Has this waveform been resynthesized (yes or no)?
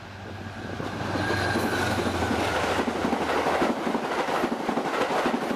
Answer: no